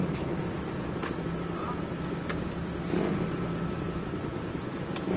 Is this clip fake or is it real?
fake